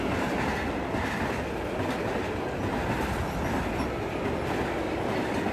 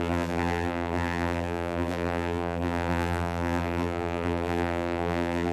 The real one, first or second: first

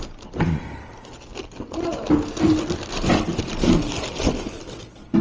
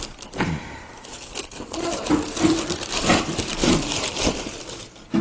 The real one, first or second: first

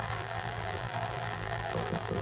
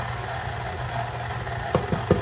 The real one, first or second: second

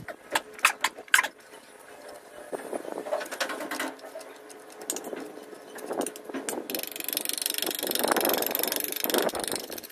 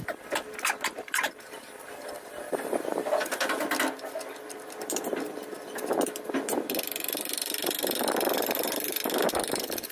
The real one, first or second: first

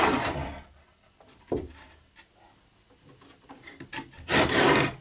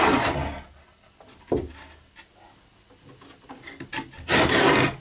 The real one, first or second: second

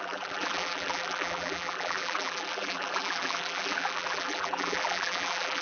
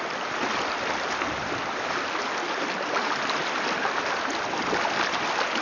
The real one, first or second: second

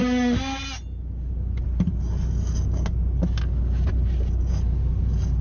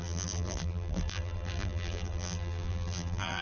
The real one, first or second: first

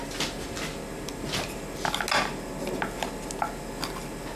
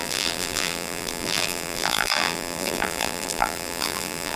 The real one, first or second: first